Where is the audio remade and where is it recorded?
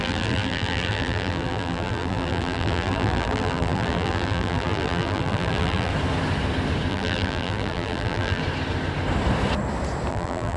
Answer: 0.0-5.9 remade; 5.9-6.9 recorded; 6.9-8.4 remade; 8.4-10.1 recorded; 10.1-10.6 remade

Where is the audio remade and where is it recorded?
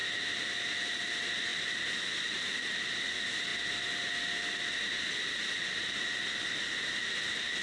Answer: 0.0-1.5 recorded; 1.5-2.4 remade; 2.4-7.6 recorded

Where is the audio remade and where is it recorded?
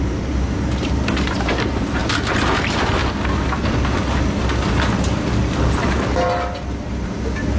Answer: 0.0-2.0 remade; 2.0-2.6 recorded; 2.6-3.0 remade; 3.0-6.8 recorded; 6.8-7.6 remade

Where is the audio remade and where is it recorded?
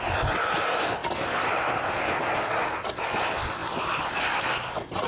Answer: 0.0-3.6 recorded; 3.6-4.2 remade; 4.2-5.1 recorded